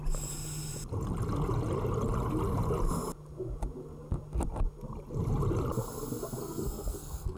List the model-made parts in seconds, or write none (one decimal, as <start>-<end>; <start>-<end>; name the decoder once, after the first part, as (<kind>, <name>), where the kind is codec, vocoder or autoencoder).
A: 6.4-7.4 (codec, SNAC)